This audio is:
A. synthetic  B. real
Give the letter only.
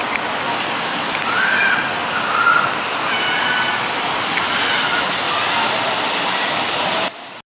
B